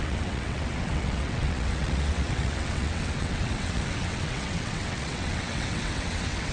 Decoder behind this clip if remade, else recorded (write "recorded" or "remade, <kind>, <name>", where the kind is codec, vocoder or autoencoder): remade, vocoder, WaveNeXt